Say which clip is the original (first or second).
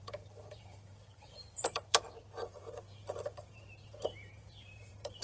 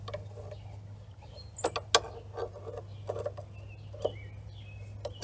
second